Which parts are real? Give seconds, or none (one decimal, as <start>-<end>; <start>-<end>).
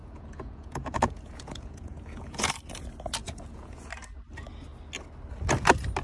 2.5-3.2; 3.9-6.0